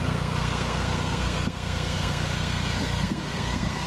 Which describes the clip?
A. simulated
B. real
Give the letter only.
A